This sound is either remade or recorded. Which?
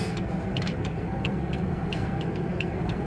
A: remade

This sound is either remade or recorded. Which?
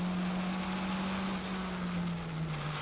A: recorded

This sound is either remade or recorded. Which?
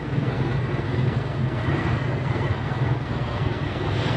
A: remade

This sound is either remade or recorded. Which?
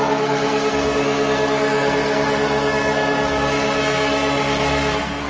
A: remade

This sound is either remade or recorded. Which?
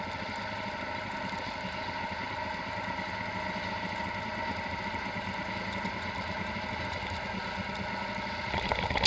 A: recorded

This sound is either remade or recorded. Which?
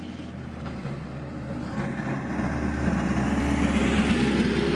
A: recorded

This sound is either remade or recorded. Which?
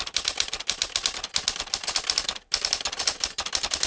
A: recorded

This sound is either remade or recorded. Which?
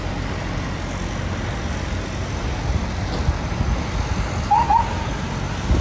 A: recorded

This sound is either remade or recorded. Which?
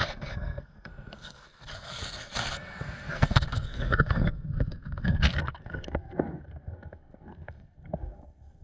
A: remade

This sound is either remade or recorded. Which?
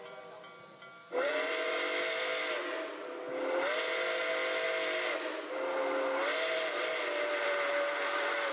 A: recorded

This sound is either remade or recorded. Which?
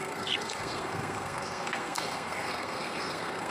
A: remade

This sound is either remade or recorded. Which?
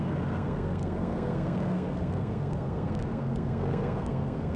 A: remade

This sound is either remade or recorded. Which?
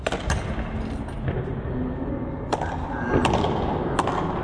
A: recorded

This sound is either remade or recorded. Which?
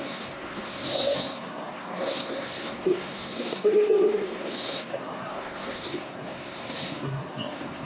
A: remade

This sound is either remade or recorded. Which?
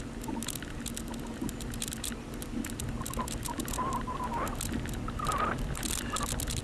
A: recorded